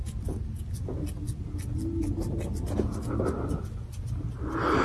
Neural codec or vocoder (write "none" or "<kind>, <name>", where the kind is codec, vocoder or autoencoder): none